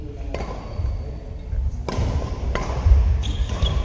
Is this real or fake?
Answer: real